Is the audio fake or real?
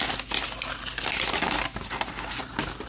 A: real